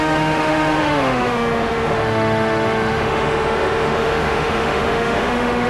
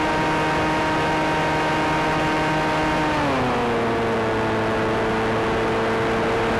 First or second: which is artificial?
first